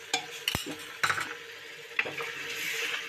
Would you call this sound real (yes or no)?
yes